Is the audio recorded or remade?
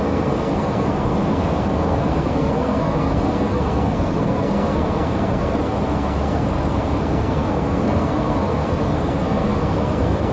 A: remade